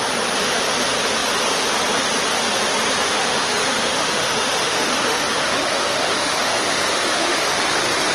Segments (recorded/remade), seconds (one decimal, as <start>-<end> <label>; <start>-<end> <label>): 0.0-3.1 recorded; 3.1-7.6 remade; 7.6-8.1 recorded